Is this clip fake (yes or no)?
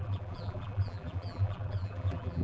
yes